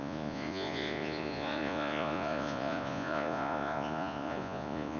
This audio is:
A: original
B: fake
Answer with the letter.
B